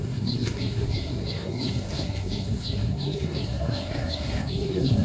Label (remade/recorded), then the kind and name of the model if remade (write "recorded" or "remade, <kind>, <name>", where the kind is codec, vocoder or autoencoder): remade, codec, SNAC